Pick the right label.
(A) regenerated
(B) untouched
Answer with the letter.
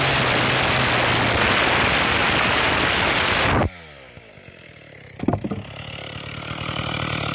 B